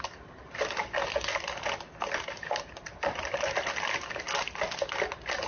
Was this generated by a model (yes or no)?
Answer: no